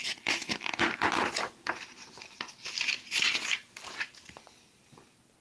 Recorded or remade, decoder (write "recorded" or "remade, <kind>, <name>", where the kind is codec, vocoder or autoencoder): remade, vocoder, BigVGAN v2